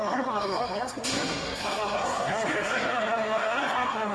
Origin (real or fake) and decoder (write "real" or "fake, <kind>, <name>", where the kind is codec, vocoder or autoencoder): fake, codec, SNAC